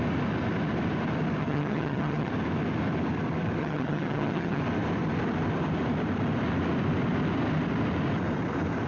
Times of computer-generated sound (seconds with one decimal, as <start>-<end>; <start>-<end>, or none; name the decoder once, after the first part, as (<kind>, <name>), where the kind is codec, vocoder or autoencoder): 1.4-2.3 (vocoder, HiFi-GAN); 3.6-4.6